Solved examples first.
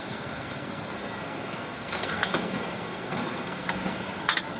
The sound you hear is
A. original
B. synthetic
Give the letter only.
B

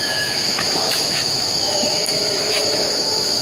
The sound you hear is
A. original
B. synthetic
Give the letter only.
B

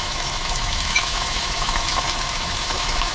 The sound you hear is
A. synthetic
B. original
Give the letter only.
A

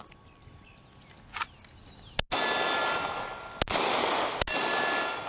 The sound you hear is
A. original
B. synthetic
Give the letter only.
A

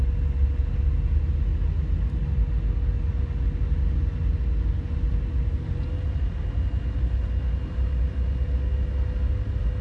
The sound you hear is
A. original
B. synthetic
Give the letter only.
A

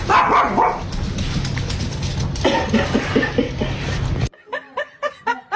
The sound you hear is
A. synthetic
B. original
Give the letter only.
B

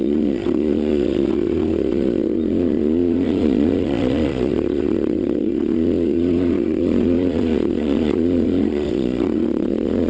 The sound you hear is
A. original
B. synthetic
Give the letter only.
B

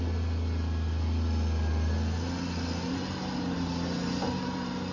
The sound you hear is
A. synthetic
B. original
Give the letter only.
B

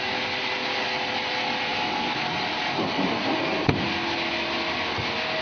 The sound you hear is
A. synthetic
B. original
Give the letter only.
B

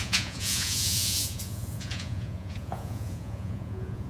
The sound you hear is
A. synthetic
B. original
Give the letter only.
A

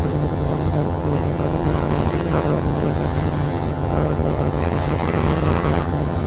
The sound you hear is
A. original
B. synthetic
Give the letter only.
B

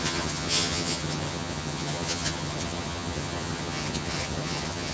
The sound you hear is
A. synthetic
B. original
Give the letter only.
A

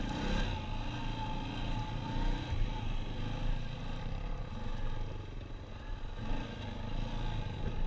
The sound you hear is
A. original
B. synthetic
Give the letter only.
A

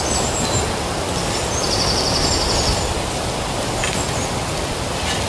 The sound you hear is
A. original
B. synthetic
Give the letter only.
A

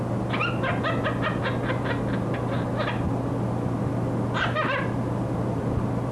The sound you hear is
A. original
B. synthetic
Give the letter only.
A